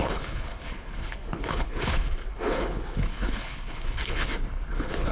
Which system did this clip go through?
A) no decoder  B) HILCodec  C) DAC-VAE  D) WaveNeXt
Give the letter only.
B